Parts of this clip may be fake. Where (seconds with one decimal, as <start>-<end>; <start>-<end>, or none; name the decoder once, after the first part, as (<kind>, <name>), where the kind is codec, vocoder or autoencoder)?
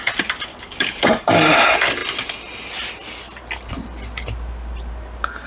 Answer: 0.5-1.4 (codec, DAC)